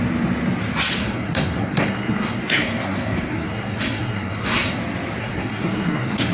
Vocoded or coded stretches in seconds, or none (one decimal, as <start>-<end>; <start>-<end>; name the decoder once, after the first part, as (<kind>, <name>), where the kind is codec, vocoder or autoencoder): 1.0-4.8 (codec, SNAC); 5.2-6.3